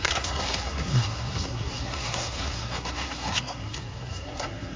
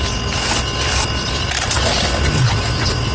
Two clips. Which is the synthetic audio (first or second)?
first